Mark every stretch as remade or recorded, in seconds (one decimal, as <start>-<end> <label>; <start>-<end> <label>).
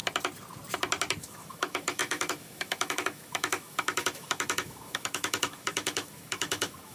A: 0.0-1.2 recorded; 1.2-6.9 remade